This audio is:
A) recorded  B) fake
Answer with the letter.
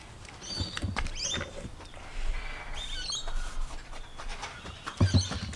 A